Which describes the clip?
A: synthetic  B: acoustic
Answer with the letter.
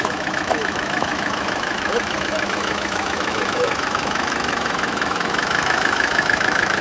A